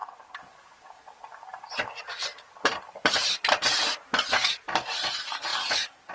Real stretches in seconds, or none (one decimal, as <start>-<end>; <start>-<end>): 5.5-6.1